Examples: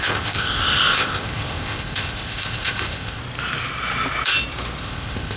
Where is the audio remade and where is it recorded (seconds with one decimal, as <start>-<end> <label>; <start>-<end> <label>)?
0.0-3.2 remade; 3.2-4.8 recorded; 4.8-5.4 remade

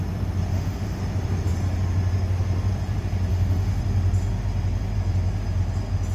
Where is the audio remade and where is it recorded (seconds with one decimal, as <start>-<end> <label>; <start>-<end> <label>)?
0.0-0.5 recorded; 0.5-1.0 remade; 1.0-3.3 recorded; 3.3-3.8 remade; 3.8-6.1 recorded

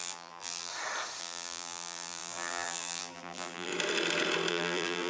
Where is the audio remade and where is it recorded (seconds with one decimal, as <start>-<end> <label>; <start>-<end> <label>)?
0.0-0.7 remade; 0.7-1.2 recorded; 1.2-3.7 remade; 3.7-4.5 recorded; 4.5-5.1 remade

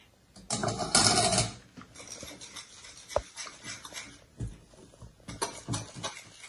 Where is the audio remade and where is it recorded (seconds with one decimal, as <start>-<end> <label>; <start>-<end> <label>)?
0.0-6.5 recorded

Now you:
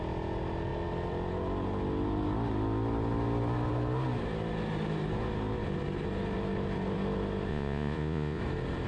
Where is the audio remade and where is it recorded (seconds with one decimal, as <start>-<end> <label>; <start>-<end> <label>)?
0.0-7.5 recorded; 7.5-8.4 remade; 8.4-8.9 recorded

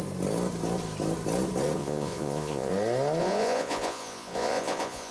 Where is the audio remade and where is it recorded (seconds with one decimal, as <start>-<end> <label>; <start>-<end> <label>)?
0.0-1.8 recorded; 1.8-2.7 remade; 2.7-3.2 recorded; 3.2-5.1 remade

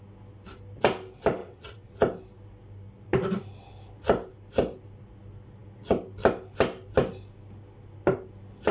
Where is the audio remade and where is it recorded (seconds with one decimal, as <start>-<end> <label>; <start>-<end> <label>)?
0.0-1.4 recorded; 1.4-1.9 remade; 1.9-8.7 recorded

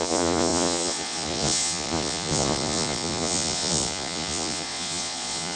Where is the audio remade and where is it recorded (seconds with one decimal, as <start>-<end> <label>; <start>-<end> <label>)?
0.0-5.6 remade